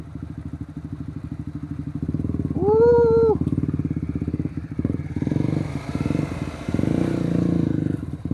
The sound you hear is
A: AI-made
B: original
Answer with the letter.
B